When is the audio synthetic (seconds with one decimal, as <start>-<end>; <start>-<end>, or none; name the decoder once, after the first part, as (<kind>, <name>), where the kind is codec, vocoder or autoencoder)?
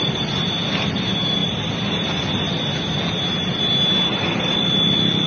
none